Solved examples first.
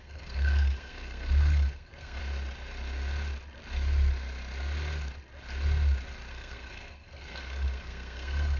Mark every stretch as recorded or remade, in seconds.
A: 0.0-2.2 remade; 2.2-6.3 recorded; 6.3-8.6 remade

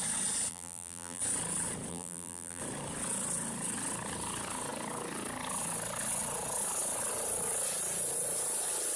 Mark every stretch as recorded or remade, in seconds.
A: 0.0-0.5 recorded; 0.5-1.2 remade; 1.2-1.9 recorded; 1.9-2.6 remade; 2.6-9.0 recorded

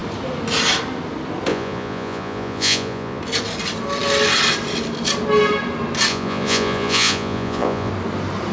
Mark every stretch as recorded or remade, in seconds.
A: 0.0-1.5 recorded; 1.5-3.2 remade; 3.2-6.1 recorded; 6.1-7.9 remade; 7.9-8.5 recorded

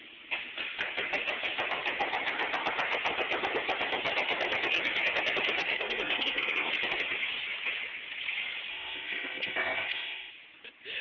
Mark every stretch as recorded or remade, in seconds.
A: 0.0-5.6 recorded; 5.6-6.7 remade; 6.7-8.7 recorded; 8.7-10.3 remade; 10.3-11.0 recorded

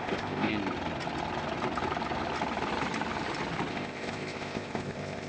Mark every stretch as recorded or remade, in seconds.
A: 0.0-0.5 remade; 0.5-3.7 recorded; 3.7-5.3 remade

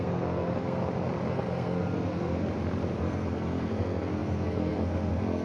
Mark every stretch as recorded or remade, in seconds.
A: 0.0-0.8 remade; 0.8-1.3 recorded; 1.3-2.4 remade; 2.4-3.0 recorded; 3.0-5.4 remade

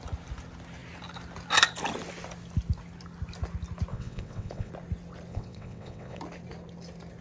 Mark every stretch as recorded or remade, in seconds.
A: 0.0-3.9 recorded; 3.9-4.7 remade; 4.7-5.3 recorded; 5.3-6.2 remade; 6.2-7.2 recorded